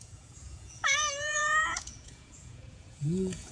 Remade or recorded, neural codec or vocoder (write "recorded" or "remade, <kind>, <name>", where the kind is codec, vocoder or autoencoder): remade, vocoder, Vocos